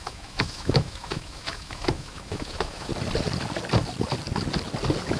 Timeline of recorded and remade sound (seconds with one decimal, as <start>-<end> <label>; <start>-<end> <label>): 0.0-2.9 remade; 2.9-5.2 recorded